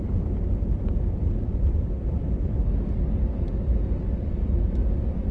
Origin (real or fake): real